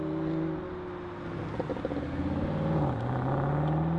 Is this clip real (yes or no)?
yes